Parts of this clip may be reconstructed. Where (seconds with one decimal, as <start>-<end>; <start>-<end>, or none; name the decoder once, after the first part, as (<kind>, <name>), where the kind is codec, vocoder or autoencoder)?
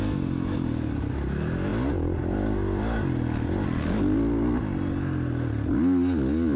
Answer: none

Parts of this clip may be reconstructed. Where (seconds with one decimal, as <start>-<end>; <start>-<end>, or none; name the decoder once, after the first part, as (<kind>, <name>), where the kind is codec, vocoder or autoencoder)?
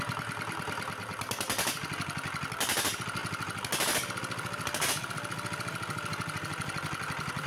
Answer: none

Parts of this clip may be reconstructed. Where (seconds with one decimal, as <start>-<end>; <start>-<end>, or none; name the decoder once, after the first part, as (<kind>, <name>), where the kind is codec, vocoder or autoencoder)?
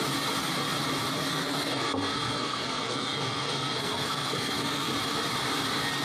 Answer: 1.3-4.9 (codec, SNAC)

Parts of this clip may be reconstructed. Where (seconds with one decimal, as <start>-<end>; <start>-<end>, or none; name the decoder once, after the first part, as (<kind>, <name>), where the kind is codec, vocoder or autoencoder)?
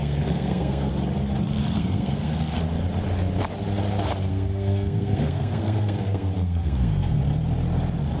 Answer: 0.0-0.9 (codec, SNAC); 1.6-2.6; 4.3-7.2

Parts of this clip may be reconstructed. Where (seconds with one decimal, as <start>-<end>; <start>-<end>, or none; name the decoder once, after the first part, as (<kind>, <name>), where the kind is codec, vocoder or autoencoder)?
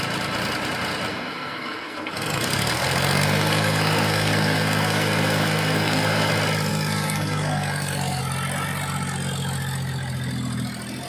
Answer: 1.1-6.3 (codec, SNAC); 6.7-8.2